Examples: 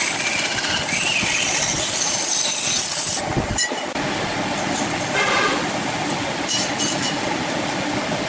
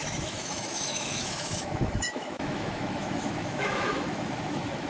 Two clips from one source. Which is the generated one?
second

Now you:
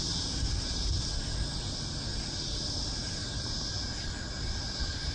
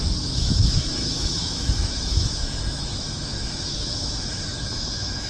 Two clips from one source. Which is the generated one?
second